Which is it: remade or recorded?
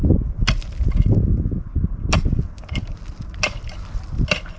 recorded